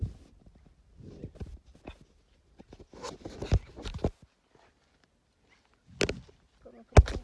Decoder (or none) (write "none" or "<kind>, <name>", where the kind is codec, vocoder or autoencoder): none